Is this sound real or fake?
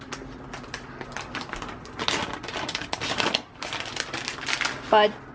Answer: real